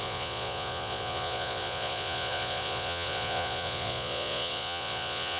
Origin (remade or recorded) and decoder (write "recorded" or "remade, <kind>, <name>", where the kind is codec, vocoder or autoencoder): remade, vocoder, Vocos